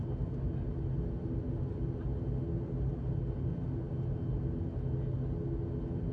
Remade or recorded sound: recorded